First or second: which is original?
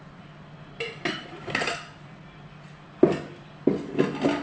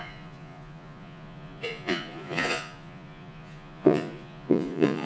first